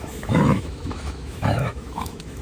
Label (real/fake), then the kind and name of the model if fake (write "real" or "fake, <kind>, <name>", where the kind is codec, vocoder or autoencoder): fake, autoencoder, DAC-VAE